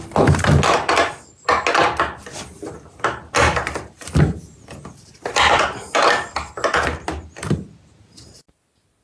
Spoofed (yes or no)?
no